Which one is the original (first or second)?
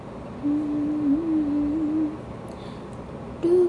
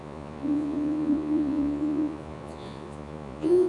first